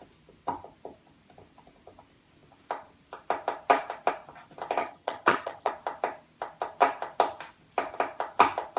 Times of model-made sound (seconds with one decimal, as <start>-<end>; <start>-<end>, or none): 4.8-5.7